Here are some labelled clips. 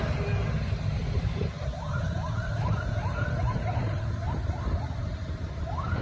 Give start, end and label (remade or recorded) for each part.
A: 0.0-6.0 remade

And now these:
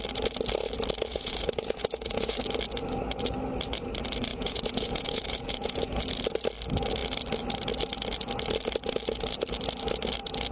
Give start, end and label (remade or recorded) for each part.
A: 0.0-1.1 recorded; 1.1-2.4 remade; 2.4-4.3 recorded; 4.3-6.0 remade; 6.0-10.5 recorded

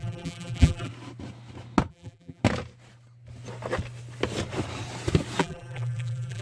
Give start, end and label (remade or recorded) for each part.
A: 0.0-0.9 remade; 0.9-1.9 recorded; 1.9-2.4 remade; 2.4-5.4 recorded; 5.4-6.4 remade

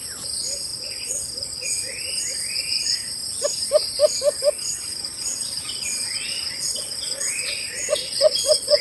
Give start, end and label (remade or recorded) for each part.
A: 0.0-0.7 recorded; 0.7-2.0 remade; 2.0-4.9 recorded; 4.9-8.8 remade